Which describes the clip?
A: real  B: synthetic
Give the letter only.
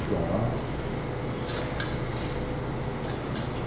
A